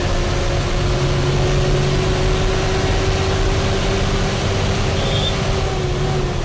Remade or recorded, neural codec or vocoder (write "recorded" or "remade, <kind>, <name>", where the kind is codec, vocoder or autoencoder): recorded